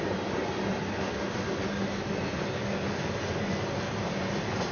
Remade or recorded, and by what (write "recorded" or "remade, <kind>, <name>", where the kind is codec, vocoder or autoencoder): recorded